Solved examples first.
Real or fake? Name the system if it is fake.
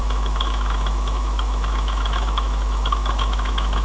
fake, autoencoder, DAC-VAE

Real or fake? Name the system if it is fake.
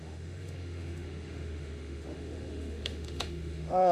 fake, autoencoder, DAC-VAE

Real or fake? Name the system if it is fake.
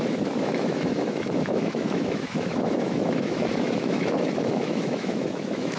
fake, autoencoder, DAC-VAE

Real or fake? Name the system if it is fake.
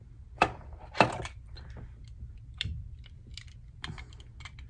real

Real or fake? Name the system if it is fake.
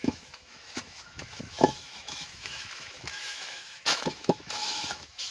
fake, autoencoder, DAC-VAE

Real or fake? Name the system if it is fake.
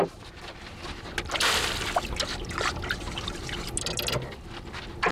real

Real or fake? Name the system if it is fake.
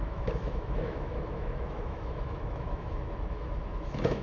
fake, autoencoder, DAC-VAE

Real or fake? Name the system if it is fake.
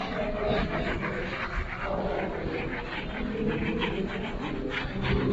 real